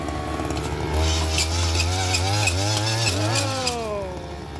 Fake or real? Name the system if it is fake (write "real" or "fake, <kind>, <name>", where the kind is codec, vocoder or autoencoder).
real